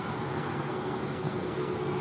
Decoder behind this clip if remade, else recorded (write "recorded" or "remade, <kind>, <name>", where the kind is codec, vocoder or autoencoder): remade, codec, SNAC